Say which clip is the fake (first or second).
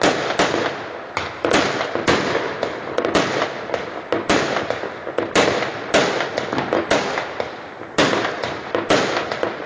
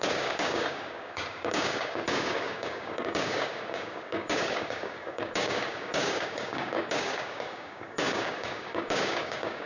second